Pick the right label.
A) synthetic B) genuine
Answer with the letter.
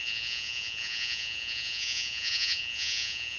A